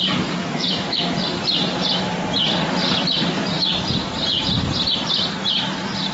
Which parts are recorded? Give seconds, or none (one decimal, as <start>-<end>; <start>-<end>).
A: 0.0-0.4; 1.0-6.1